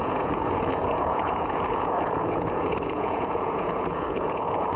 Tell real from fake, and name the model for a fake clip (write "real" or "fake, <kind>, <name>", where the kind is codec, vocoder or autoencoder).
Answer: fake, vocoder, Vocos